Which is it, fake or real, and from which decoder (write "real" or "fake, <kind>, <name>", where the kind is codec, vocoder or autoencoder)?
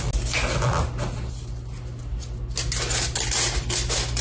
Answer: real